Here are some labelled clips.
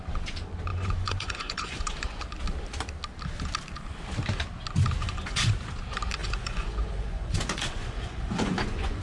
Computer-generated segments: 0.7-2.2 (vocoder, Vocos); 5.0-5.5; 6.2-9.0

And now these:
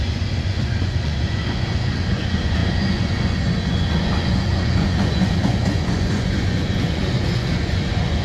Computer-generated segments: 0.0-8.2 (vocoder, Vocos)